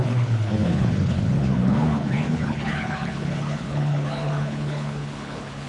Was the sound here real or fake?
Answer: fake